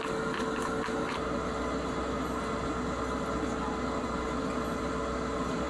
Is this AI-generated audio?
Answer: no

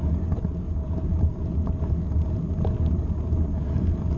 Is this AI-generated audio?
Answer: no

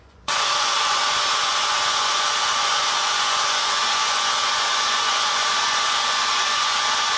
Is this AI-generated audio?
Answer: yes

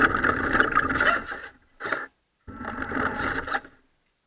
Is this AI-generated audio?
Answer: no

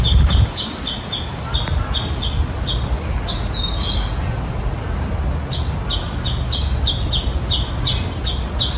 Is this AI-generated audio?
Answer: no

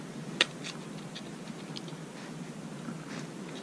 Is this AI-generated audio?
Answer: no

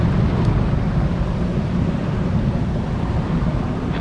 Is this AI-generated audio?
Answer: no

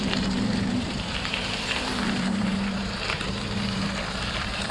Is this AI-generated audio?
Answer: yes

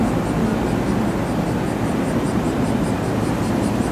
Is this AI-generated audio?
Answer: no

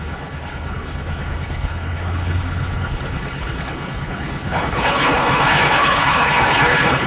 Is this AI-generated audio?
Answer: yes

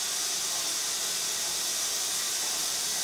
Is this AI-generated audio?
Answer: yes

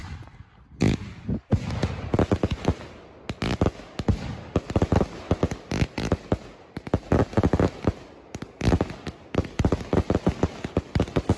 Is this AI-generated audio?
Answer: no